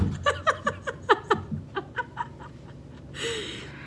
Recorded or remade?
recorded